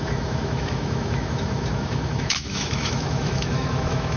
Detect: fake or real fake